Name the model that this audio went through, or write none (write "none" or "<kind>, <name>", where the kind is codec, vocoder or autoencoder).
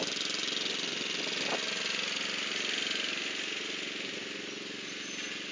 none